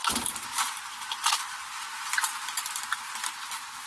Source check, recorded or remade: recorded